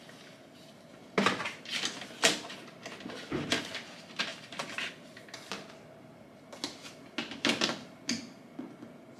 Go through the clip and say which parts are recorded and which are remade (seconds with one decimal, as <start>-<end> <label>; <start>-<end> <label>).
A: 0.0-9.2 recorded